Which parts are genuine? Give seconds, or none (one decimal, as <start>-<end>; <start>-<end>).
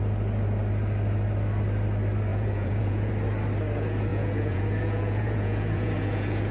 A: 0.0-2.3; 3.1-4.1